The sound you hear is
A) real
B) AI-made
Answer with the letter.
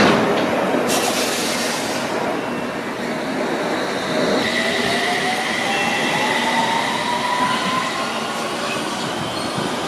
A